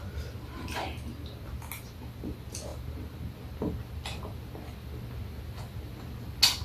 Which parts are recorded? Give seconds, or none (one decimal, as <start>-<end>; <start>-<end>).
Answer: 0.0-6.6